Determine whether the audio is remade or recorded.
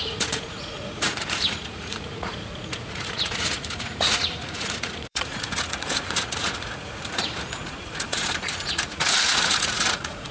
remade